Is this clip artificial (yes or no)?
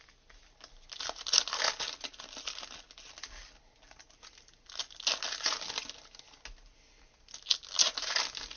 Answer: no